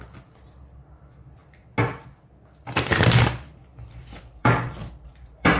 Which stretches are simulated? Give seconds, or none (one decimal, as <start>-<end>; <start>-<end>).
2.6-3.6; 4.4-5.6